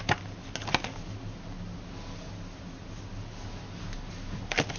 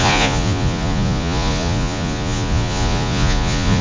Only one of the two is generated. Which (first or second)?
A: second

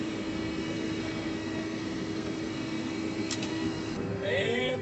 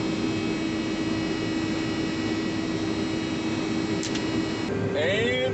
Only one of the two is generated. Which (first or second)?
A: first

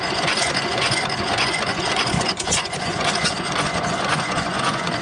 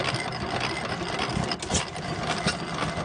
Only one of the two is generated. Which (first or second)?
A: first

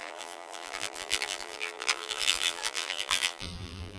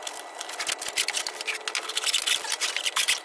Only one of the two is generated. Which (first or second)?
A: first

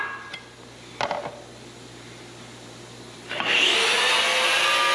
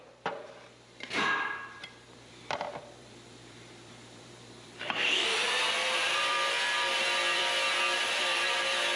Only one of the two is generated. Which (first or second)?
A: second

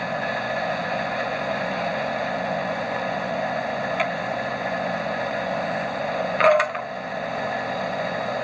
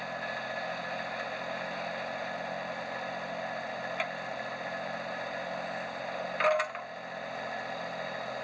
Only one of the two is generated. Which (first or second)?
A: first